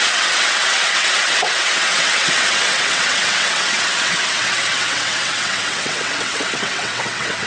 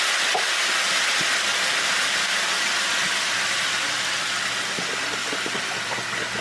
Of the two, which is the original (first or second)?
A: second